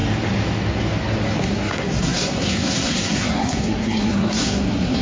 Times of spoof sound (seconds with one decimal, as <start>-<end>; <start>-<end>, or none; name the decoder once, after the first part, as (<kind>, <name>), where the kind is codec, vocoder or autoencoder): 1.4-5.0 (codec, SNAC)